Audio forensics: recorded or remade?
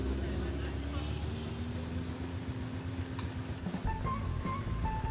recorded